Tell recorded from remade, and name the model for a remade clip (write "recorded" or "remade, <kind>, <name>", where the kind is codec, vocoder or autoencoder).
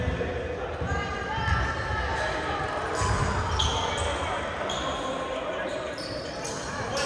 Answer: recorded